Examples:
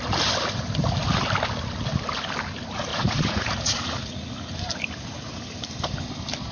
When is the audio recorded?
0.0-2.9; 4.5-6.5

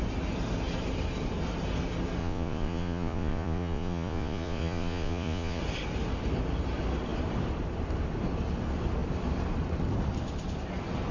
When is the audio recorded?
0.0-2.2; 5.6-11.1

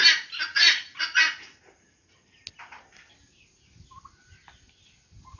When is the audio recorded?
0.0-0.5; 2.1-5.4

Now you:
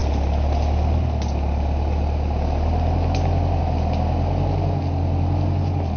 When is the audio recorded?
0.0-6.0

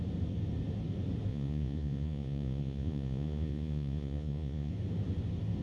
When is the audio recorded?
0.0-1.3; 4.7-5.6